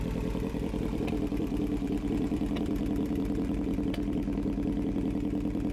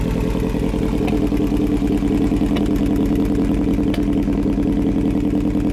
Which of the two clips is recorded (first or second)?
second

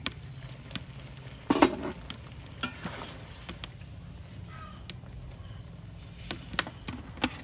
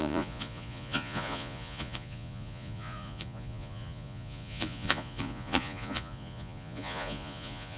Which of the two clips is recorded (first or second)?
first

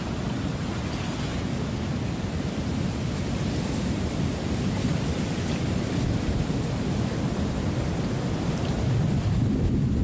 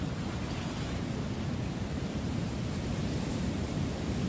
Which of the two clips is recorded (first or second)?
first